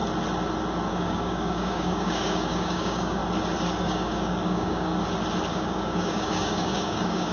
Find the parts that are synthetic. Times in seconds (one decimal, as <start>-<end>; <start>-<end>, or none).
0.9-3.2; 3.8-4.9; 5.5-7.3